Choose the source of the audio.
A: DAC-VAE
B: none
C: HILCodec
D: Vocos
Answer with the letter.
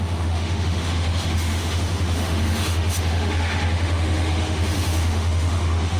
A